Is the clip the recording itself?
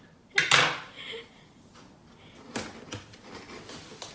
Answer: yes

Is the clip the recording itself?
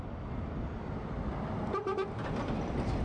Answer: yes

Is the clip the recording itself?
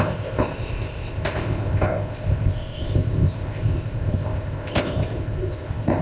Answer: no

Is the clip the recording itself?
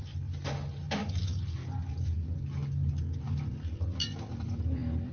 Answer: yes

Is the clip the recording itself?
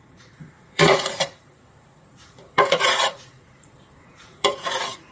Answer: no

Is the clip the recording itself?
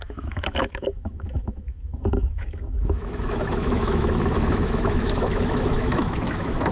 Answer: no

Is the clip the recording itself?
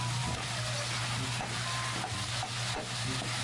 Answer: yes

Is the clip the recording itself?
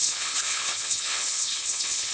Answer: no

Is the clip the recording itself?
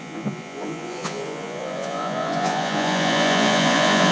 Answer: no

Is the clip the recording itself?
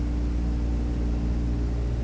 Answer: yes